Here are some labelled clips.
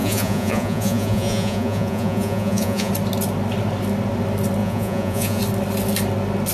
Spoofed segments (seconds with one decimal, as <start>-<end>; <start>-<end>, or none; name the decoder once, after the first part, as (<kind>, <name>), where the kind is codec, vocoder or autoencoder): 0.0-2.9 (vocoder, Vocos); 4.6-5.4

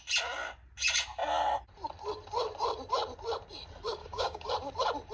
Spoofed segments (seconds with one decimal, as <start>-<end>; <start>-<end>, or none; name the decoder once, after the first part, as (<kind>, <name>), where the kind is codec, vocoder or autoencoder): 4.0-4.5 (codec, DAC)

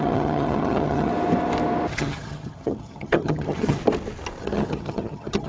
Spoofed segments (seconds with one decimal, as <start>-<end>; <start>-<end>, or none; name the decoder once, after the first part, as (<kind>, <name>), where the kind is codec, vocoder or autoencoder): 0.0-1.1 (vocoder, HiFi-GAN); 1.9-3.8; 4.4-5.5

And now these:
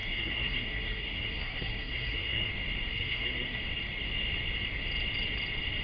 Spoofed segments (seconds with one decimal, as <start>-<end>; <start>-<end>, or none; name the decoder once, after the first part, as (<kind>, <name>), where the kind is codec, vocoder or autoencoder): 0.0-2.5 (codec, SNAC); 2.9-3.6